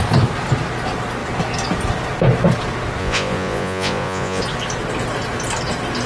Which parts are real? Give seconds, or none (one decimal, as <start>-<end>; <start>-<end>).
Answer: 0.0-3.0; 4.4-6.1